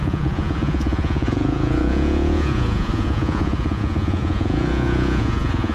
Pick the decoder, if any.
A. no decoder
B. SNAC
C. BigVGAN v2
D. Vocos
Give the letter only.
D